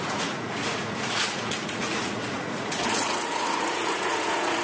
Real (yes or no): no